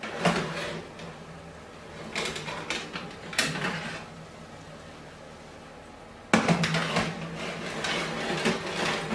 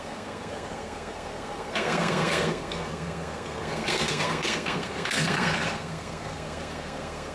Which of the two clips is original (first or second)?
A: first